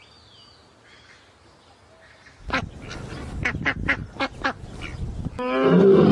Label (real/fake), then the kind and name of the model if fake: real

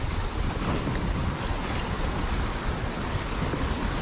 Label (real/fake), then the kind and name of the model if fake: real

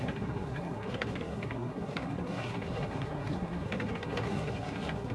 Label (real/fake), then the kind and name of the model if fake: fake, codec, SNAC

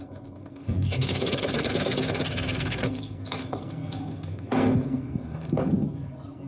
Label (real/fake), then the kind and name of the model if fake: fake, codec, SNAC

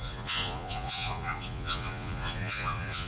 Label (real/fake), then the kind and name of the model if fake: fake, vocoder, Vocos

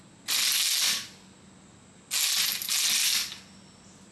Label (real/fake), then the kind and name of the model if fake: real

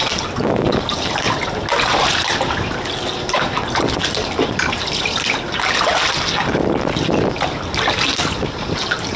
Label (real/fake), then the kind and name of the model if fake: real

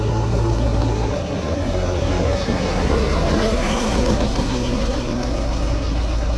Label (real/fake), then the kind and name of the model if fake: fake, codec, SNAC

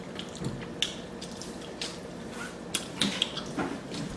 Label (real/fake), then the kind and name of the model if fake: real